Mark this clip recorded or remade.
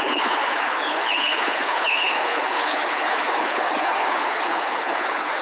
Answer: remade